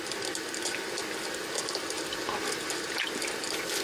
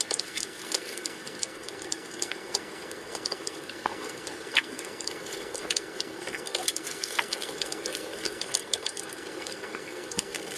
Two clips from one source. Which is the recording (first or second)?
first